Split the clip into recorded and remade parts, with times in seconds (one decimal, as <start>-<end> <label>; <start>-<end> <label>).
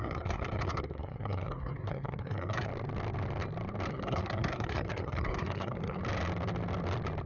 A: 0.0-2.7 remade; 2.7-3.9 recorded; 3.9-6.0 remade; 6.0-7.3 recorded